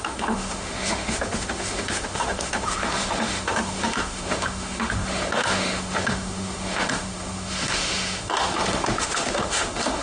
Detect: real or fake fake